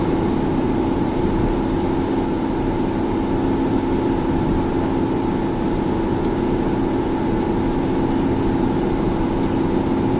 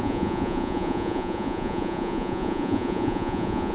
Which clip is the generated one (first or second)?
second